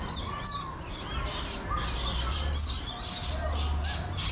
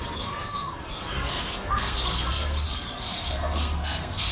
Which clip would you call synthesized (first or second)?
second